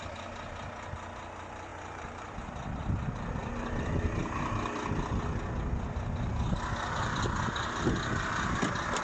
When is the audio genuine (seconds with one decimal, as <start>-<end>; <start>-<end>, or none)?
0.0-1.7; 2.5-9.0